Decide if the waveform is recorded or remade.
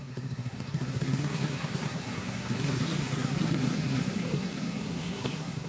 remade